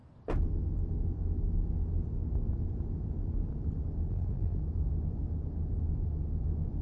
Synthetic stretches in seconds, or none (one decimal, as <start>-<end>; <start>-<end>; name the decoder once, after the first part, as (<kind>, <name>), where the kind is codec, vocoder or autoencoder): 4.1-4.6 (vocoder, BigVGAN v2)